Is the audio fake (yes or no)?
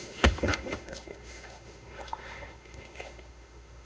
yes